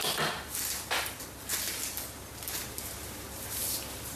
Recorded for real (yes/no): yes